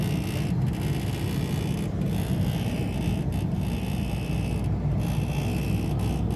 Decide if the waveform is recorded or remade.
recorded